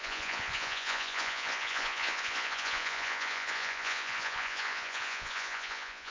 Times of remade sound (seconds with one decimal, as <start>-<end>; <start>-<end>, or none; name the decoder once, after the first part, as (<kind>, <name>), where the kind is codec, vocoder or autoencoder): 0.0-6.1 (vocoder, Vocos)